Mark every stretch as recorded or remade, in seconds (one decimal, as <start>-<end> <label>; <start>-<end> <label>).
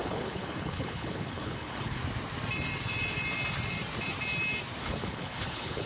0.0-2.0 remade; 2.0-4.8 recorded; 4.8-5.9 remade